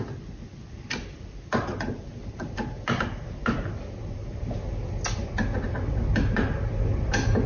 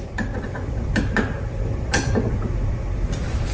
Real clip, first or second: first